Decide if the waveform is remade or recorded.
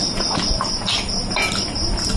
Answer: recorded